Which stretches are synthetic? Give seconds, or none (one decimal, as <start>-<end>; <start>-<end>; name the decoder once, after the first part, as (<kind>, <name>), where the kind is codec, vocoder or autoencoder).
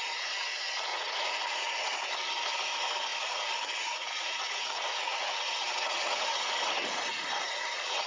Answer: 0.9-2.0 (vocoder, Vocos); 3.1-6.5; 7.1-8.1